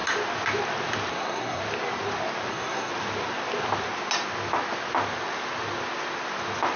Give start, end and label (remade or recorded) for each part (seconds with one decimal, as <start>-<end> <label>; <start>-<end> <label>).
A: 0.0-1.1 recorded; 1.1-1.6 remade; 1.6-2.5 recorded; 2.5-2.9 remade; 2.9-6.8 recorded